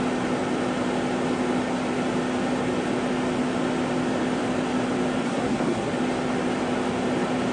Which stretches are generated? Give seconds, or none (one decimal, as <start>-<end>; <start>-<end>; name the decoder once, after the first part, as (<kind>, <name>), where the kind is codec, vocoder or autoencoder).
5.2-5.9 (codec, SNAC)